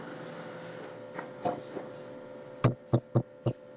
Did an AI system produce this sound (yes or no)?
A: no